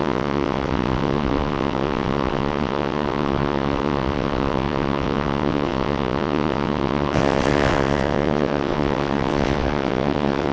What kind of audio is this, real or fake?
fake